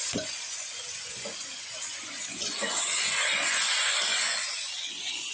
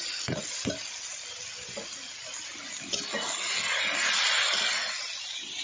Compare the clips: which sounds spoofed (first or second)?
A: first